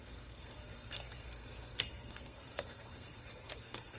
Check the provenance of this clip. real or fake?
fake